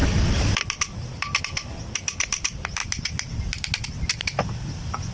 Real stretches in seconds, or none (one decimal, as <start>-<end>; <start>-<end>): 0.0-5.1